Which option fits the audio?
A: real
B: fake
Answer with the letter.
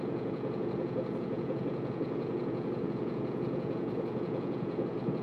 B